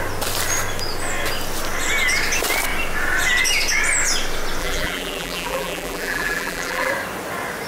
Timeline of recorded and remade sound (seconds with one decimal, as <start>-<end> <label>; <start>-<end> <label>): 0.0-4.6 recorded; 4.6-6.9 remade; 6.9-7.7 recorded